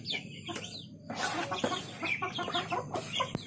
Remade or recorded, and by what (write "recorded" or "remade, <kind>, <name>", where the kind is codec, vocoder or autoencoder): recorded